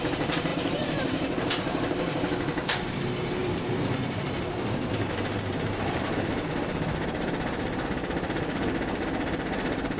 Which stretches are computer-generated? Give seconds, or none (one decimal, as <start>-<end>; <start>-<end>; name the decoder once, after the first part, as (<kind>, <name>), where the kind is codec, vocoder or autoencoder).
0.0-10.0 (vocoder, BigVGAN v2)